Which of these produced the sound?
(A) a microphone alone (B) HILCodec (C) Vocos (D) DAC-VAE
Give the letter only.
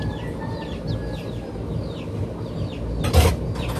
A